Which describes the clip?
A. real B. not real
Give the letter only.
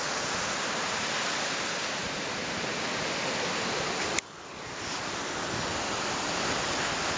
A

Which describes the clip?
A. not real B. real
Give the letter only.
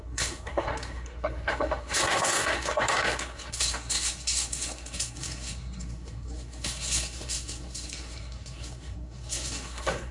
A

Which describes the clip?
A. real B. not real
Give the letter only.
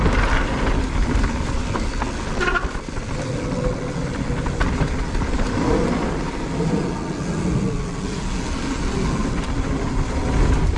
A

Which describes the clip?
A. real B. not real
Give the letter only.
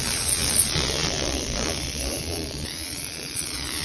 B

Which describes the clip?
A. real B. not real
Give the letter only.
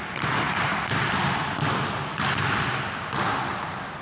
A